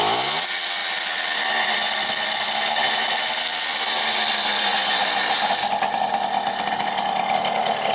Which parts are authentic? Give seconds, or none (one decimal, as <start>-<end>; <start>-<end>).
0.0-7.9